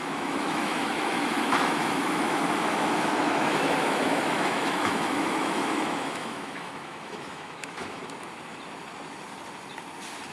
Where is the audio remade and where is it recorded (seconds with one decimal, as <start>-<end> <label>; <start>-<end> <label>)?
0.0-8.0 remade; 8.0-10.3 recorded